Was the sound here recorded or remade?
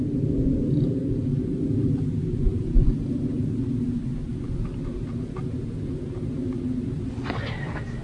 recorded